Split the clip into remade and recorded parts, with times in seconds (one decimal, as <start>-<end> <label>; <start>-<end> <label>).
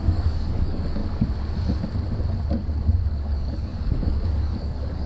0.0-1.0 remade; 1.0-3.1 recorded; 3.1-5.1 remade